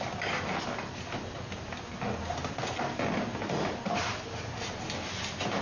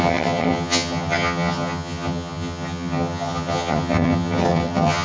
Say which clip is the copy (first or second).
second